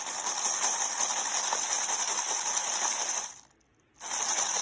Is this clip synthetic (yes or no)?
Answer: no